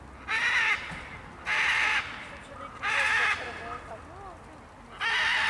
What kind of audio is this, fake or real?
real